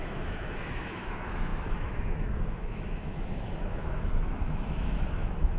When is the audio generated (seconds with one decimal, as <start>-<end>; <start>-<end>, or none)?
0.0-5.6